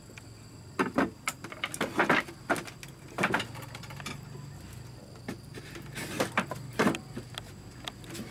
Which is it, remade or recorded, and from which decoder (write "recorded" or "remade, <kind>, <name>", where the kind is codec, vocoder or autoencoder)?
recorded